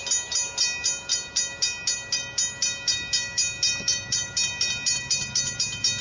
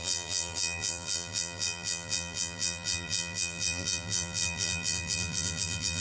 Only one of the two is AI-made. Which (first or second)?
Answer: second